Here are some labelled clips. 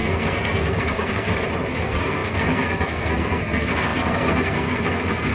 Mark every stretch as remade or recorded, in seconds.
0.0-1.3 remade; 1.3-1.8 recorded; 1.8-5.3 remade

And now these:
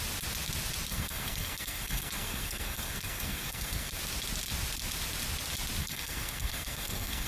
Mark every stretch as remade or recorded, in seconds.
0.0-0.9 recorded; 0.9-4.0 remade; 4.0-5.8 recorded; 5.8-7.3 remade

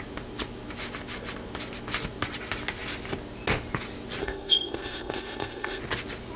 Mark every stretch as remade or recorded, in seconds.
0.0-4.2 recorded; 4.2-5.8 remade; 5.8-6.4 recorded

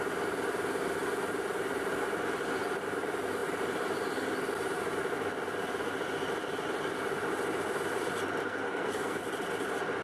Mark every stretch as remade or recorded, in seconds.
0.0-8.4 recorded; 8.4-9.2 remade; 9.2-10.0 recorded

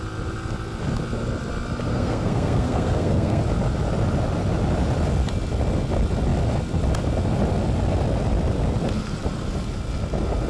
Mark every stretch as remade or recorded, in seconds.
0.0-1.9 recorded; 1.9-3.4 remade; 3.4-10.5 recorded